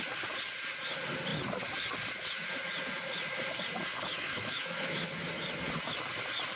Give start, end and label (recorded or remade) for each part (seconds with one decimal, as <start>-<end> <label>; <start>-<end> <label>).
0.0-4.1 recorded; 4.1-5.0 remade; 5.0-6.6 recorded